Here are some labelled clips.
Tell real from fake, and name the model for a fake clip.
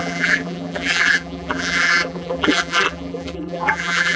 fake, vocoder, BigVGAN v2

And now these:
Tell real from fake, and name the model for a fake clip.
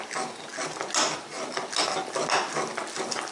real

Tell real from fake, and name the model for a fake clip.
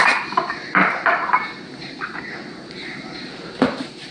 fake, vocoder, BigVGAN v2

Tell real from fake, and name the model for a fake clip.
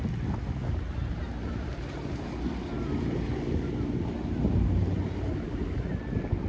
real